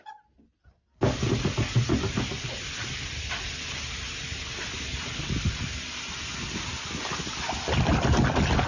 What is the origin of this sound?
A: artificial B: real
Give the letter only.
B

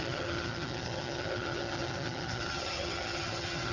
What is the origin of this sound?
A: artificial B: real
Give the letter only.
A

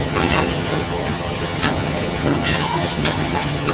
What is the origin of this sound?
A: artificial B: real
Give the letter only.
A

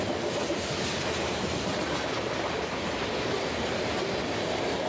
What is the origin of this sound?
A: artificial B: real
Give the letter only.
B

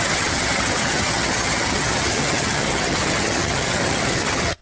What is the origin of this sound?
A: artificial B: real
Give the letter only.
A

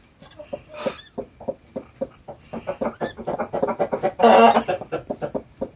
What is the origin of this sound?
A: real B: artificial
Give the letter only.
A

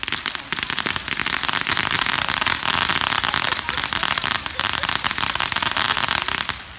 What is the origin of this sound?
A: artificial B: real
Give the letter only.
B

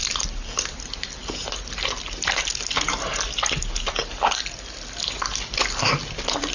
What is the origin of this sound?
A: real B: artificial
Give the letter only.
A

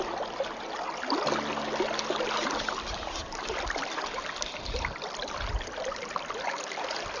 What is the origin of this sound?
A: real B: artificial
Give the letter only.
A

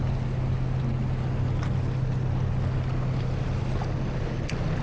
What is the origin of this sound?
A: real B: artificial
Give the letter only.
A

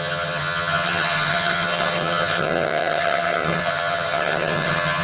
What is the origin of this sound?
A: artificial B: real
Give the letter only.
A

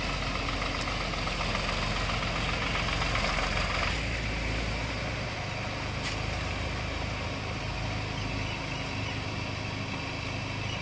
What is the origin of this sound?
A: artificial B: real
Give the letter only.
B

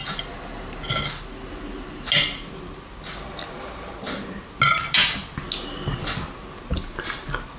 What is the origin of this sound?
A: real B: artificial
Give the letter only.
A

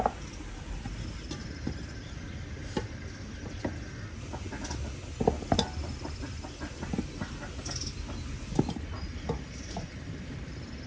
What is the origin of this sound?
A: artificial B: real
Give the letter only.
B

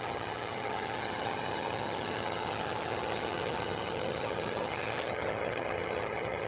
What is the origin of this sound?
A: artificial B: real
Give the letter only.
A